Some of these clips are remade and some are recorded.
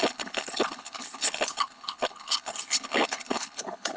remade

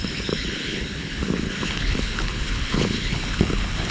remade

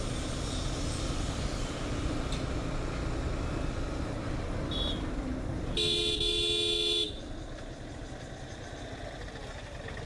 recorded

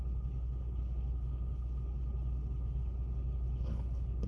remade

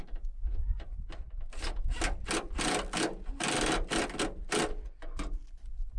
recorded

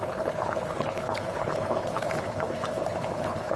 remade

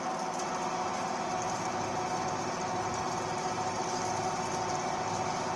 recorded